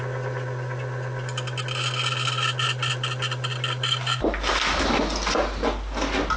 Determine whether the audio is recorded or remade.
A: recorded